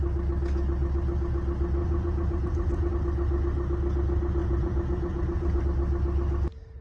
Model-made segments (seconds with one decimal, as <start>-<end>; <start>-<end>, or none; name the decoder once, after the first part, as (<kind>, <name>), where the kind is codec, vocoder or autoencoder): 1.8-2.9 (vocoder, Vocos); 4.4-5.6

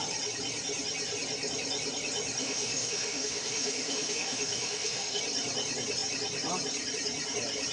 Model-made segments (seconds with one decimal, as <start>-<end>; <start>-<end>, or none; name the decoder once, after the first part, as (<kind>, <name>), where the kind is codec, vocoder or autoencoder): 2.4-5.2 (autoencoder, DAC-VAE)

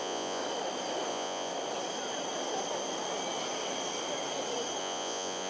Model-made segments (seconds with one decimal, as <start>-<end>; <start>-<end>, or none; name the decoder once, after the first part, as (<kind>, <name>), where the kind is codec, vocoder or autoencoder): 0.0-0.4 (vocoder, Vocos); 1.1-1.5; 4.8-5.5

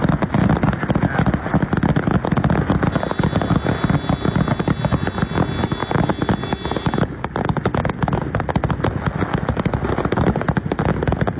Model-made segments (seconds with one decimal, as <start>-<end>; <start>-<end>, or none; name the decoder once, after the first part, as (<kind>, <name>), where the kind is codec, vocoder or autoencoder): none

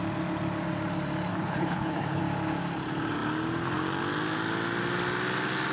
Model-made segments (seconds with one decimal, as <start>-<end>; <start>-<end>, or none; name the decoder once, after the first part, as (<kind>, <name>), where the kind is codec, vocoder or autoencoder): 1.3-2.2 (codec, HILCodec)